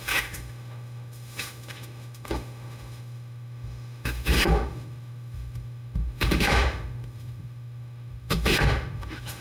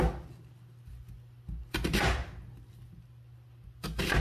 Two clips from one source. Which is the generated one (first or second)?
first